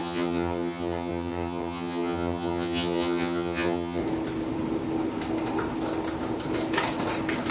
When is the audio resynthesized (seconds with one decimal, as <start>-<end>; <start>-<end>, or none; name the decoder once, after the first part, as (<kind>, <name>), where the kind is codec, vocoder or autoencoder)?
0.0-4.0 (vocoder, HiFi-GAN)